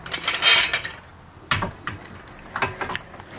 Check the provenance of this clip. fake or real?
real